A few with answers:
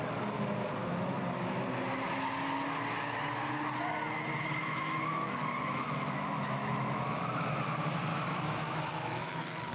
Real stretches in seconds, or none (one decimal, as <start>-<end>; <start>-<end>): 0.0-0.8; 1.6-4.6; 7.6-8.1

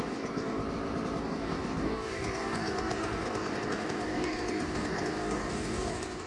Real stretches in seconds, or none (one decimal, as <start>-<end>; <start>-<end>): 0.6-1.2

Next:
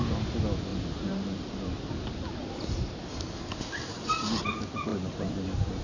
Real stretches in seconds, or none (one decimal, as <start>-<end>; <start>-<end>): 0.0-0.7; 3.0-5.8

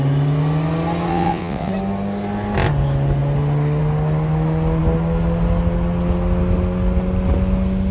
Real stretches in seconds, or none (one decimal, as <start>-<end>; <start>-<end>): 0.0-1.1; 1.7-7.9

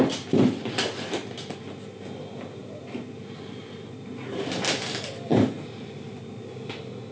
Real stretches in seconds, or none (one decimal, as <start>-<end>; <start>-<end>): 0.0-2.6; 4.1-5.3; 6.1-7.1

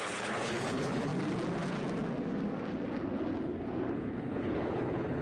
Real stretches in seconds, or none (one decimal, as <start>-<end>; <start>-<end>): 1.1-3.9

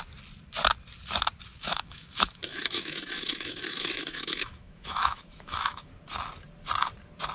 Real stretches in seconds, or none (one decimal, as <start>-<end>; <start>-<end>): 0.0-1.5; 5.9-7.3